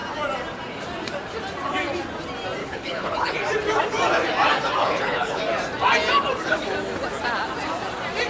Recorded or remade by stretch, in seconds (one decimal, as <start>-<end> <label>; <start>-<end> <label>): 0.0-2.6 recorded; 2.6-3.3 remade; 3.3-4.8 recorded; 4.8-5.4 remade; 5.4-8.3 recorded